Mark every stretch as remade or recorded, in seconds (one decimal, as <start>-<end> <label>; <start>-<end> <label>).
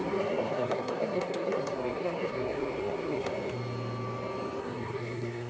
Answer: 0.0-3.3 remade; 3.3-4.6 recorded; 4.6-5.5 remade